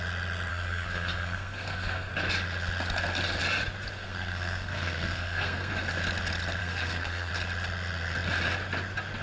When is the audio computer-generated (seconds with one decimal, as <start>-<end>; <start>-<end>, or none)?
0.5-2.1; 4.0-5.7; 6.6-7.3